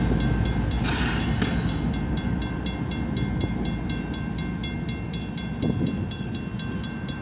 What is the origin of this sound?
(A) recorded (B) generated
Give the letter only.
A